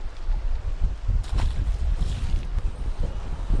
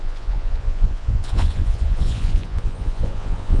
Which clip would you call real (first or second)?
first